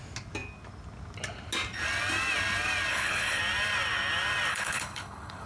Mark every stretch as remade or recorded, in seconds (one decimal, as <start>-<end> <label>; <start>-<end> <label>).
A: 0.0-2.9 recorded; 2.9-3.4 remade; 3.4-4.5 recorded; 4.5-5.5 remade